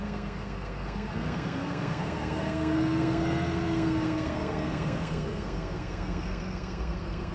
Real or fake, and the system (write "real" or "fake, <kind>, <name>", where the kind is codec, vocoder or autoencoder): fake, codec, SNAC